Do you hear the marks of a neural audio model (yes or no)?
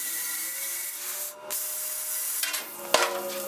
no